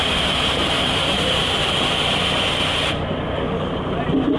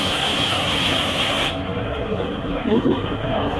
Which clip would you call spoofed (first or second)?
second